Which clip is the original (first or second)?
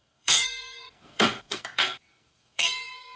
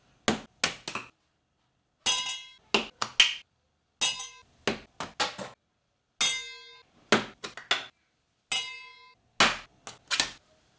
second